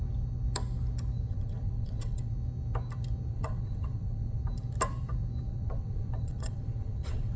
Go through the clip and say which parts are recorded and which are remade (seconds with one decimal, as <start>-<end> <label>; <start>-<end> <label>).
0.0-1.3 recorded; 1.3-2.3 remade; 2.3-3.3 recorded; 3.3-4.4 remade; 4.4-5.5 recorded; 5.5-7.4 remade